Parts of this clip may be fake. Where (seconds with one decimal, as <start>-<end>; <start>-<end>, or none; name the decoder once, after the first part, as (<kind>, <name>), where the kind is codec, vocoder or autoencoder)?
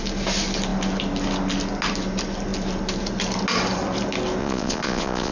4.4-5.3 (vocoder, Vocos)